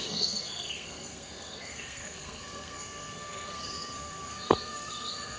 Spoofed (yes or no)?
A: yes